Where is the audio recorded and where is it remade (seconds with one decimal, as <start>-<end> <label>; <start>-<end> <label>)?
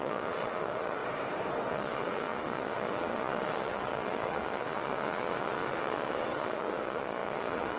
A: 0.0-1.0 remade; 1.0-1.7 recorded; 1.7-7.8 remade